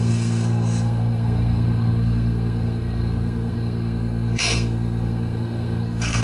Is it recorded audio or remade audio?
remade